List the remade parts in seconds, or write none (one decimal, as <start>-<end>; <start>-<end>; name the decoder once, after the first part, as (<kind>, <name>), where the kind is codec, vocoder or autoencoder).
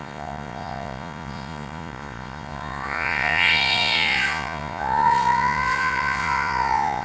0.0-7.0 (vocoder, Vocos)